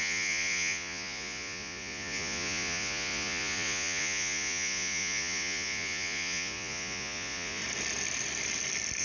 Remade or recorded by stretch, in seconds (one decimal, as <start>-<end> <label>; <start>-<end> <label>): 0.0-7.6 remade; 7.6-9.0 recorded